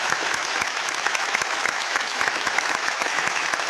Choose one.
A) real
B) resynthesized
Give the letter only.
B